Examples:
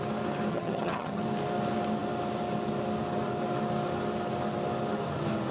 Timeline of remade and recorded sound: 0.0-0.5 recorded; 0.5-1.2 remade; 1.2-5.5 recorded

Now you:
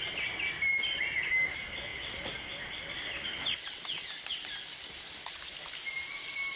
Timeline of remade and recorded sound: 0.0-6.6 recorded